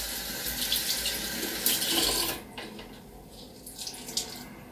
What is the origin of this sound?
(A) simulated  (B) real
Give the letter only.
B